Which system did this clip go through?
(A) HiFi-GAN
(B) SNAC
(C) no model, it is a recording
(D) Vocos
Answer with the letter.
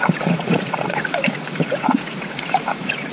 D